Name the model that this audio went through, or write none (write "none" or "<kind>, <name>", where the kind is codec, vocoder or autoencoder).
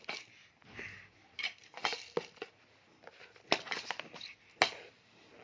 none